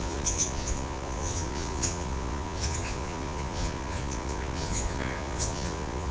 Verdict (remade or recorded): remade